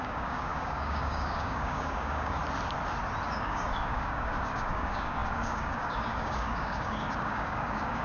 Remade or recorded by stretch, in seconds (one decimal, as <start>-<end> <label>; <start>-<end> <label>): 0.0-2.4 remade; 2.4-3.3 recorded; 3.3-8.0 remade